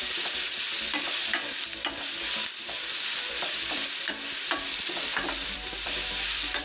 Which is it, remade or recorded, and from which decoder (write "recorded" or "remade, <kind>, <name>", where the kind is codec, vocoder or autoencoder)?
remade, vocoder, BigVGAN v2